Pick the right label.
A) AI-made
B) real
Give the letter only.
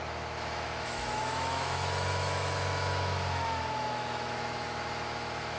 A